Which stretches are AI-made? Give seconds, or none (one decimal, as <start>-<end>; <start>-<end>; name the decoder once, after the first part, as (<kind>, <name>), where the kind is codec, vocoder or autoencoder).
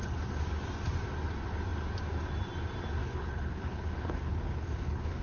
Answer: 3.0-5.2 (codec, HILCodec)